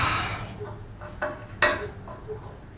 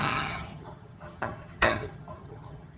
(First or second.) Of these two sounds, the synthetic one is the second